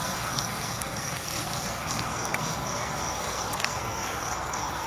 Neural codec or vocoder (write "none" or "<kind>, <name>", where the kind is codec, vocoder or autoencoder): codec, SNAC